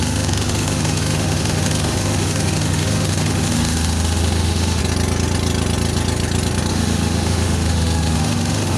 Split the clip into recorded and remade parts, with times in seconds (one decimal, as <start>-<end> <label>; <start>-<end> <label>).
0.0-4.8 remade; 4.8-6.7 recorded; 6.7-8.8 remade